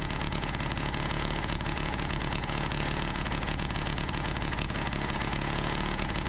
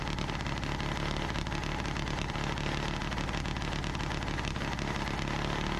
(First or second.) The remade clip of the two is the first